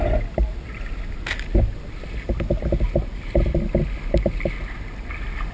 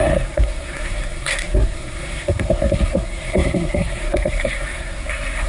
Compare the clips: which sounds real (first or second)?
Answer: first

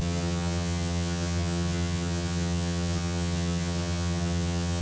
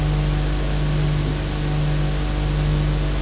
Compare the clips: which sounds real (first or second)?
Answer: second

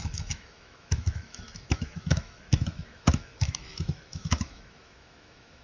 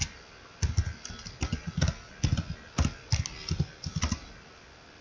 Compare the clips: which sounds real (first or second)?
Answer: second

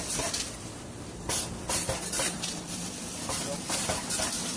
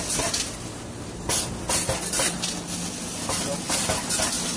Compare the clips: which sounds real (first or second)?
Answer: second